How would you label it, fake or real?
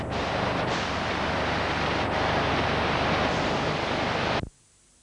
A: real